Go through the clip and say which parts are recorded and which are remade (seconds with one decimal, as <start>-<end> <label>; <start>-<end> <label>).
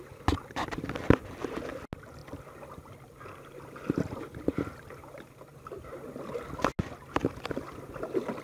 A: 0.0-8.4 recorded